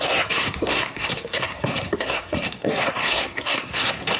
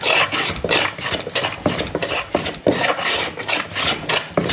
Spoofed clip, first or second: first